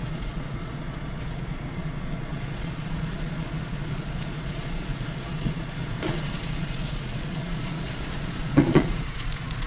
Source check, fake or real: fake